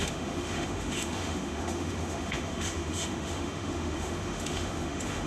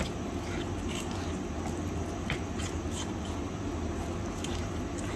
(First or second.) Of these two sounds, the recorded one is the second